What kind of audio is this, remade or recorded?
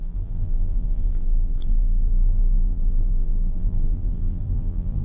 remade